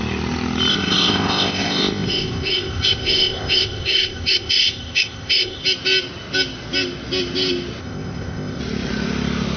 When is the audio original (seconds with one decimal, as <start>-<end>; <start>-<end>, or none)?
0.0-0.7; 5.6-7.8; 8.6-9.6